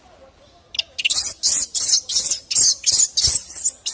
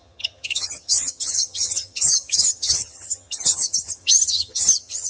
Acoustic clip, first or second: first